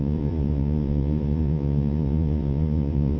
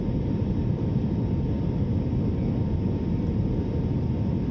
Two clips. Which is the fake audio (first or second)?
first